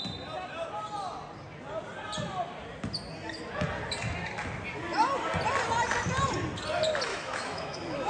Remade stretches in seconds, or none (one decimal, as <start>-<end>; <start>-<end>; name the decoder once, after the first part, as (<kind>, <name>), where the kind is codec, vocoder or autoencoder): 7.1-8.1 (autoencoder, DAC-VAE)